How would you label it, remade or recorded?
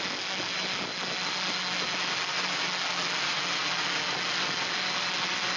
recorded